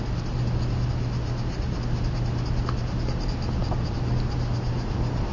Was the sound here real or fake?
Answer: real